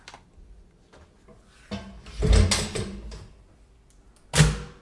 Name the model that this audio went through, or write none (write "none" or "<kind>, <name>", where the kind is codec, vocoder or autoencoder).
none